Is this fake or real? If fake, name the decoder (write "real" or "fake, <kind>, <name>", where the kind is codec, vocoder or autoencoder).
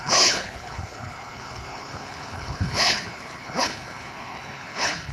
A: fake, codec, HILCodec